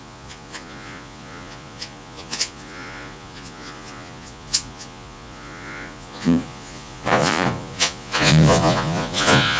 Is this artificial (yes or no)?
yes